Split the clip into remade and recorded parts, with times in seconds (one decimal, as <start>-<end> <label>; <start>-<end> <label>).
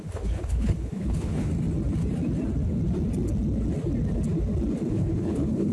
0.0-1.5 remade; 1.5-4.9 recorded; 4.9-5.7 remade